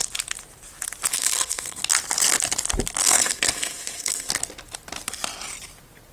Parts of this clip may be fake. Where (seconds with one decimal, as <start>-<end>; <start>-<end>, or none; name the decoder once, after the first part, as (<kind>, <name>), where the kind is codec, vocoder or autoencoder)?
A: 1.1-1.8 (codec, SNAC); 3.0-4.3